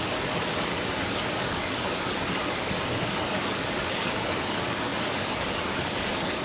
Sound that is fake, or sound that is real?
fake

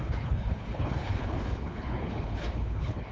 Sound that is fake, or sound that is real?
fake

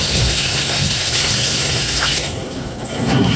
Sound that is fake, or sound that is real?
fake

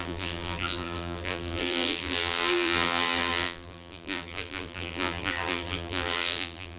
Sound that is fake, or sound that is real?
fake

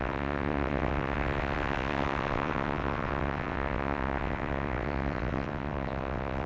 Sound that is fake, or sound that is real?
fake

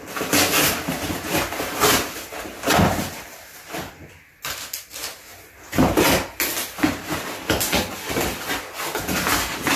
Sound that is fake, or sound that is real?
real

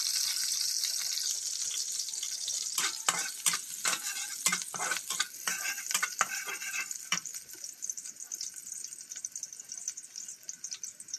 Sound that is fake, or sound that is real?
fake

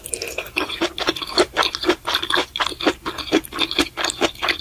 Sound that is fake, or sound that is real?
real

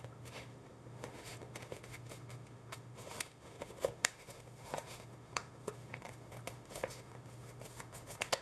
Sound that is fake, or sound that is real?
fake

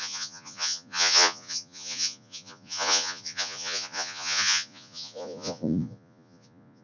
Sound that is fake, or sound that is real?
fake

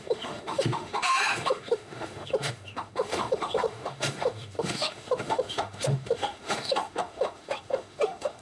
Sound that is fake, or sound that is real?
fake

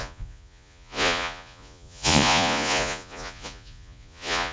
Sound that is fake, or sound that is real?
fake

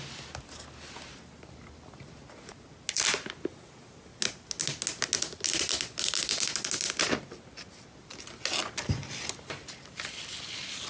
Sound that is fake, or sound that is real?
real